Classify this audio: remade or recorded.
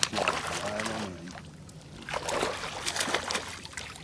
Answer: recorded